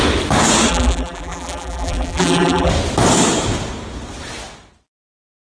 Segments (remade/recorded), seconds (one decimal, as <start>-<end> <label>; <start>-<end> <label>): 0.0-0.7 recorded; 0.7-2.7 remade; 2.7-5.5 recorded